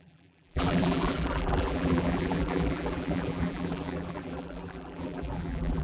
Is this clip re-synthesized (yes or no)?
yes